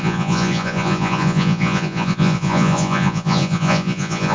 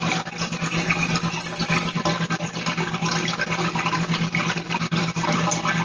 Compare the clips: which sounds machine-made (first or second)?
first